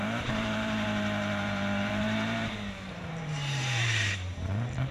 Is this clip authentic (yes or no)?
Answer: no